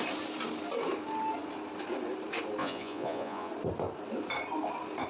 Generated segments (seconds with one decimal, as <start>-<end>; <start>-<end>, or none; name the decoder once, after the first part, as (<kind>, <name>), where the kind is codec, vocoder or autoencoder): 2.6-3.5 (vocoder, Vocos)